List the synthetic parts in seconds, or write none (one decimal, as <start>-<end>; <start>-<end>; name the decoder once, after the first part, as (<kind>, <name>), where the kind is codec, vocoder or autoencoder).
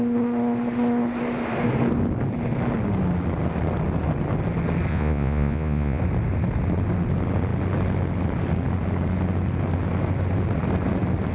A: 4.9-6.0 (vocoder, Vocos)